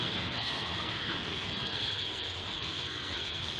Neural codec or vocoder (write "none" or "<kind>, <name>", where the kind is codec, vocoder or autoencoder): codec, SNAC